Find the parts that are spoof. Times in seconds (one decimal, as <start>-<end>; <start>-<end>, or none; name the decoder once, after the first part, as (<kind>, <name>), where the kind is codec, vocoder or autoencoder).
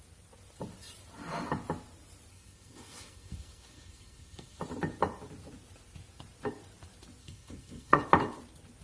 2.3-4.6 (codec, SNAC); 7.2-8.0